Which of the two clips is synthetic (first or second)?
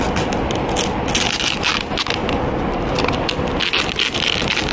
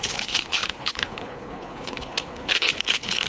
second